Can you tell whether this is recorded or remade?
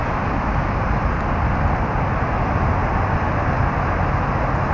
recorded